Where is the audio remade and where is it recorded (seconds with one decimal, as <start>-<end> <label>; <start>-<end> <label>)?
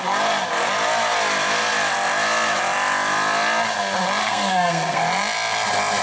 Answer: 0.0-4.2 recorded; 4.2-5.0 remade; 5.0-6.0 recorded